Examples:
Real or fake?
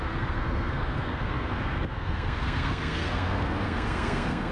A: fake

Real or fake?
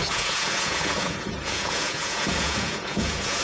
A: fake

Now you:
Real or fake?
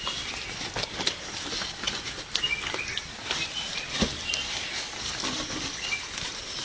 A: real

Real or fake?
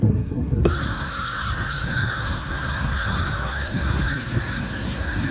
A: fake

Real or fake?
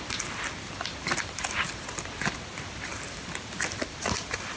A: real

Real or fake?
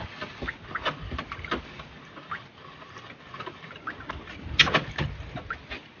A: real